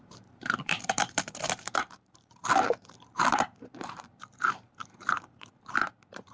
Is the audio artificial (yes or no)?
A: yes